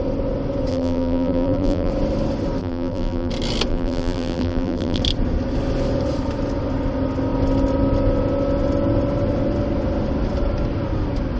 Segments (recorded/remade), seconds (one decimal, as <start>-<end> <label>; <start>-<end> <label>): 0.0-0.7 recorded; 0.7-1.9 remade; 1.9-2.6 recorded; 2.6-3.3 remade; 3.3-3.7 recorded; 3.7-5.0 remade; 5.0-11.4 recorded